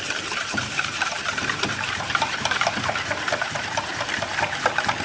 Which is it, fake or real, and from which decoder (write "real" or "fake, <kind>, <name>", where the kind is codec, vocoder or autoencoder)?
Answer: fake, vocoder, BigVGAN v2